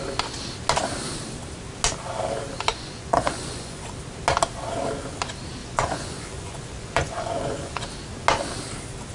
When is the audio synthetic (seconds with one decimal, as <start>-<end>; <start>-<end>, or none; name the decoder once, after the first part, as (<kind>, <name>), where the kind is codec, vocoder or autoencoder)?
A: 2.7-3.8 (vocoder, Vocos); 5.6-7.8